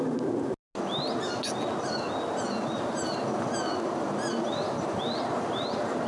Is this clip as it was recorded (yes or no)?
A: yes